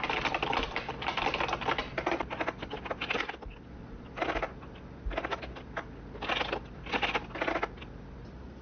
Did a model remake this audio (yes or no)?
no